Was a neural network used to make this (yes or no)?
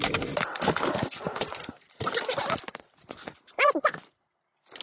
yes